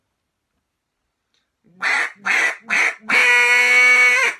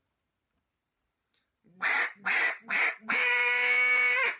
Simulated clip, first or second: second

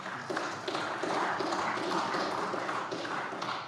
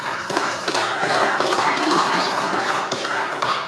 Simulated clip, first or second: second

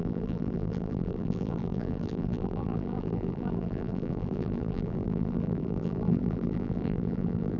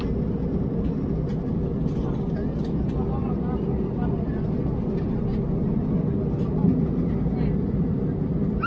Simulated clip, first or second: first